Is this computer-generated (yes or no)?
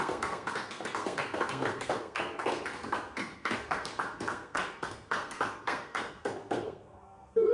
yes